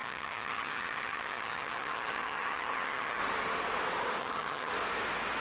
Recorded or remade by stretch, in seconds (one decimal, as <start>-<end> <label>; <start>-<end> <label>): 0.0-3.2 remade; 3.2-4.2 recorded; 4.2-4.7 remade; 4.7-5.4 recorded

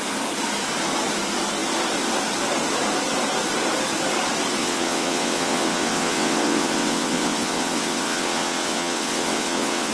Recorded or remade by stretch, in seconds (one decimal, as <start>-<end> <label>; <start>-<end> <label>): 0.0-4.6 recorded; 4.6-9.9 remade

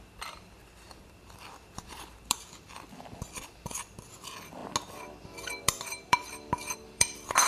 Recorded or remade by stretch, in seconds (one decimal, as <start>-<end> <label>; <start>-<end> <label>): 0.0-4.6 remade; 4.6-5.5 recorded; 5.5-7.5 remade

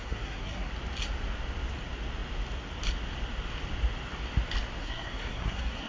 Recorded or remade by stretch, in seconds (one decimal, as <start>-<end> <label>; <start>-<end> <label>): 0.0-0.7 remade; 0.7-4.8 recorded; 4.8-5.9 remade